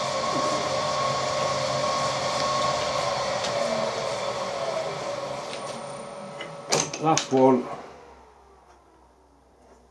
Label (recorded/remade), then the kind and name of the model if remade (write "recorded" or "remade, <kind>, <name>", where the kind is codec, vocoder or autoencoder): recorded